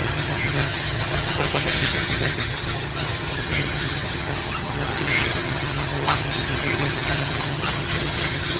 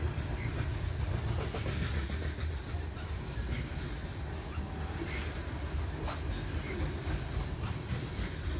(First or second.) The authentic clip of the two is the second